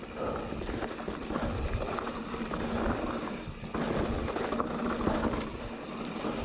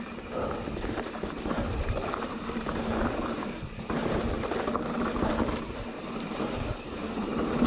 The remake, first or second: second